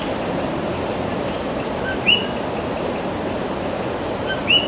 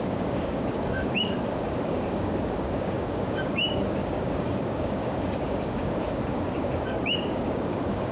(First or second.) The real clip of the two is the first